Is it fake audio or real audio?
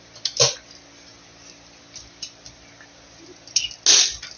real